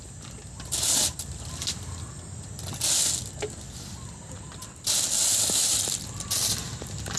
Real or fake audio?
real